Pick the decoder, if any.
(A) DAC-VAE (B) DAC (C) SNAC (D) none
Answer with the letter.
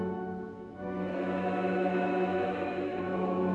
A